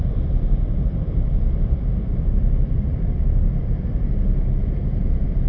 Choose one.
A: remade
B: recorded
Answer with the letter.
A